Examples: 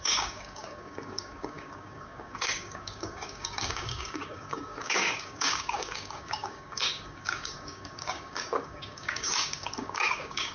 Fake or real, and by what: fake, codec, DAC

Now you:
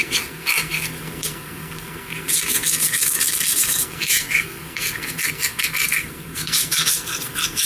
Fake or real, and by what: fake, codec, SNAC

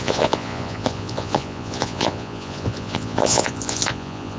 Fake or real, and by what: fake, vocoder, Vocos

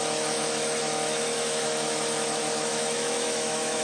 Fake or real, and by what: fake, autoencoder, DAC-VAE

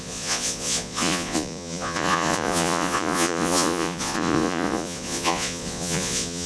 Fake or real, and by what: fake, vocoder, Vocos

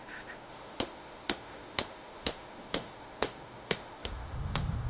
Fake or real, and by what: fake, autoencoder, DAC-VAE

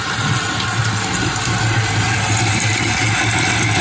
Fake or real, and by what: real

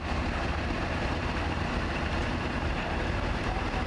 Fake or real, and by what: fake, vocoder, BigVGAN v2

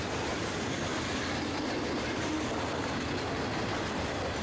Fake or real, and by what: real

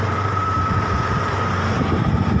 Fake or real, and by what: fake, vocoder, BigVGAN v2